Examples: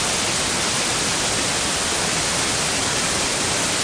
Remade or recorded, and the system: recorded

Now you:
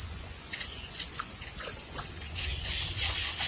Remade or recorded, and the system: remade, vocoder, Vocos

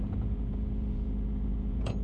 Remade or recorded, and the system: remade, vocoder, Vocos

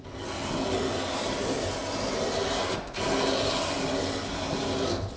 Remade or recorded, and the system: recorded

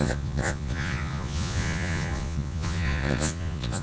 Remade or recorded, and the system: remade, vocoder, Vocos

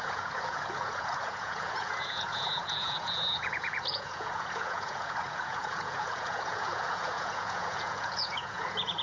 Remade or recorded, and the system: remade, vocoder, Vocos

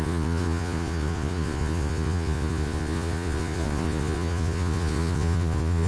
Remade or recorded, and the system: remade, vocoder, Vocos